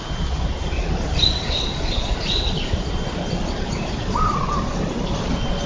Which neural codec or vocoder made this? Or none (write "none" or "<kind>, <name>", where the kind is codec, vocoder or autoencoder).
none